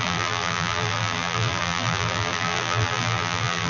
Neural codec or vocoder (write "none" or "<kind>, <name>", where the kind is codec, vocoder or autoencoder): vocoder, BigVGAN v2